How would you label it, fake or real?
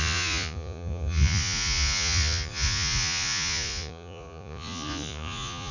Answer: fake